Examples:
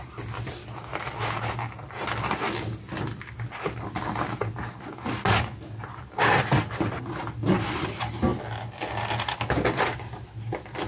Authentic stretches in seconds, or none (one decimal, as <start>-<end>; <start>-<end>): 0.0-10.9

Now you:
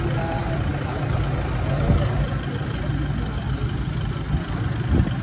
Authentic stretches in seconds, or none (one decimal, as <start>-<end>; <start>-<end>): 0.0-5.2

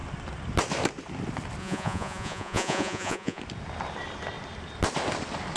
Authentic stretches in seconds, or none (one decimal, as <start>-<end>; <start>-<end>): 0.0-1.6; 3.4-5.6

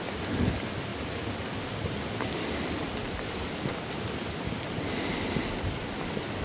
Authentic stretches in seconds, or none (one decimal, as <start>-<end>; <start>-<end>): 0.0-6.4

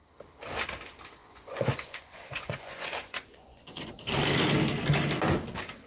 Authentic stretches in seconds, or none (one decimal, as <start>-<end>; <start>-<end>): 0.0-1.2; 3.9-5.9

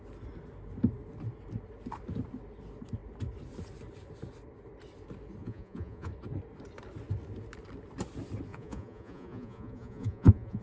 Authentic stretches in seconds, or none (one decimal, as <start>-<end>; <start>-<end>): 0.0-5.4; 6.1-8.5